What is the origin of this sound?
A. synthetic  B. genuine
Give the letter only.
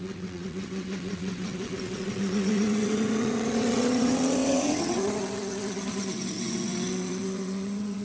A